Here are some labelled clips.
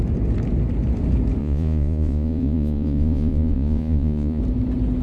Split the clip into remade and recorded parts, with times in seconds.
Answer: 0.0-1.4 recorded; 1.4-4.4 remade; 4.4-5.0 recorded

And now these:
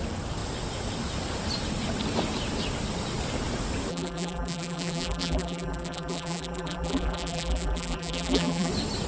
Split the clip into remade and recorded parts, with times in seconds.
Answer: 0.0-3.9 recorded; 3.9-8.7 remade; 8.7-9.1 recorded

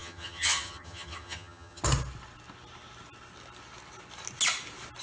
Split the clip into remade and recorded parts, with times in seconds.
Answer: 0.0-1.8 remade; 1.8-5.0 recorded

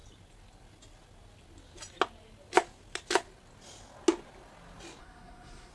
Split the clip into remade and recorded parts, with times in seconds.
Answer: 0.0-5.0 recorded; 5.0-5.7 remade

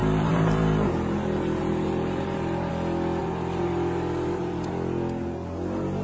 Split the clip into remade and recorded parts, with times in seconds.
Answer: 0.0-2.7 remade; 2.7-3.2 recorded; 3.2-4.7 remade; 4.7-6.0 recorded

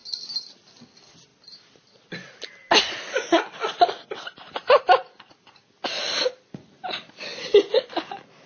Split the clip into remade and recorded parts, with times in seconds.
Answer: 0.0-0.5 recorded; 0.5-1.3 remade; 1.3-5.2 recorded; 5.2-7.3 remade; 7.3-8.5 recorded

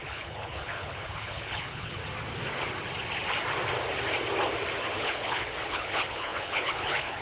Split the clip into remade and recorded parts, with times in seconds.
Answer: 0.0-2.0 remade; 2.0-4.9 recorded; 4.9-7.2 remade

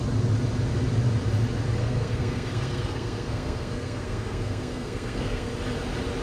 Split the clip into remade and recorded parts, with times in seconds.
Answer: 0.0-1.8 recorded; 1.8-5.5 remade; 5.5-6.2 recorded